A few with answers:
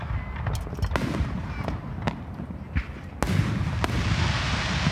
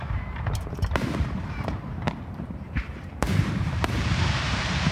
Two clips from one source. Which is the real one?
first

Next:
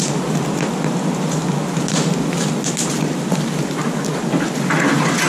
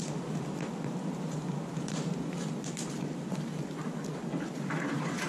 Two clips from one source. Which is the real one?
first